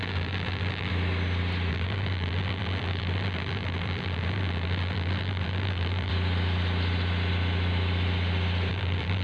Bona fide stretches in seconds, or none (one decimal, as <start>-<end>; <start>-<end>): 0.9-1.7; 6.1-8.7